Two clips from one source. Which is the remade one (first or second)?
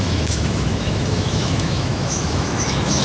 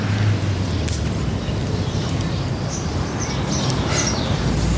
first